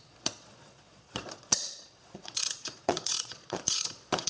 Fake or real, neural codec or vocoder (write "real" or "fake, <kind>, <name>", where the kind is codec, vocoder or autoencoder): fake, vocoder, Vocos